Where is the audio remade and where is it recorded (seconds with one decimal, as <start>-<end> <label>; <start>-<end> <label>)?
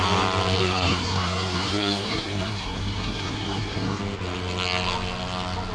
0.0-0.6 recorded; 0.6-4.0 remade; 4.0-5.7 recorded